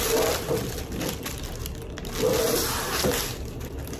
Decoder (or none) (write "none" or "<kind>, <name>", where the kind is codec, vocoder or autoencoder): none